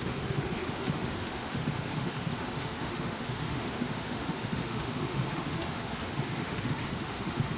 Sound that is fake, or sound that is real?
fake